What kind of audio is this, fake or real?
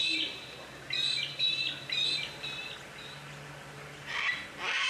real